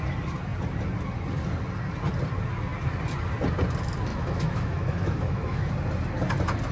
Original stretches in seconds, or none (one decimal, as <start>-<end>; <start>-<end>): 0.0-4.1; 5.7-6.7